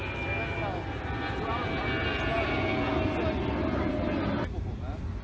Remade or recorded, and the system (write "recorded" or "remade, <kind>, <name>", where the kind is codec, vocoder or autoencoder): recorded